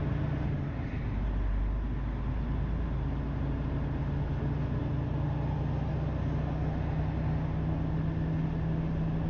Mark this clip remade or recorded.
recorded